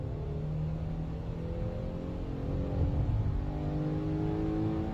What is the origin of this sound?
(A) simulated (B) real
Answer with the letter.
B